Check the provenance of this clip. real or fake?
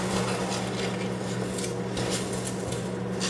real